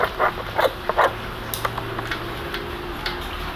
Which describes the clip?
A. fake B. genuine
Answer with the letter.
B